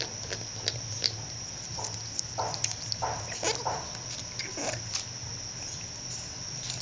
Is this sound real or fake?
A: real